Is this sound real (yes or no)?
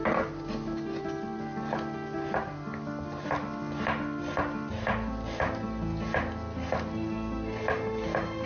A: yes